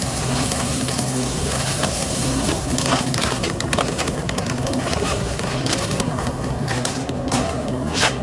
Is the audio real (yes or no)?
no